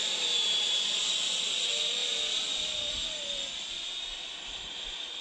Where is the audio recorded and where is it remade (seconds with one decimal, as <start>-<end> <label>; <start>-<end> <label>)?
0.0-5.2 recorded